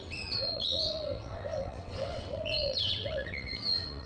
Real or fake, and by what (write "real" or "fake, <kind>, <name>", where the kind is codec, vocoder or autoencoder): fake, vocoder, WaveNeXt